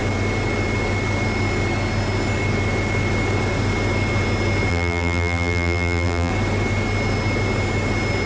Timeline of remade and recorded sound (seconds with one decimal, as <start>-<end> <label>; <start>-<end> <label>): 0.0-4.7 recorded; 4.7-6.3 remade; 6.3-8.3 recorded